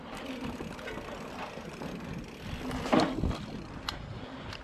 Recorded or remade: recorded